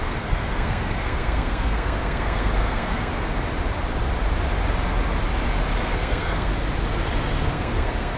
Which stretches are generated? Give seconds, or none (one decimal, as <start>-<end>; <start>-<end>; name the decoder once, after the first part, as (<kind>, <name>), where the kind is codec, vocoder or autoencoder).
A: 0.0-3.1 (codec, SNAC); 5.8-6.5; 7.5-8.2